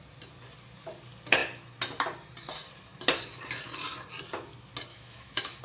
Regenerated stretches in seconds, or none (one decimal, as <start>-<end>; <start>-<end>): 4.9-5.6